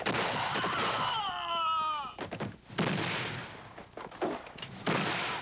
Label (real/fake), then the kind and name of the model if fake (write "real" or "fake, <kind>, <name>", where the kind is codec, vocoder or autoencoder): real